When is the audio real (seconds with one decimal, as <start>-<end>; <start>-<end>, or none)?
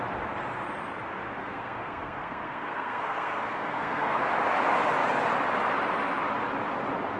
0.0-1.4; 4.2-7.2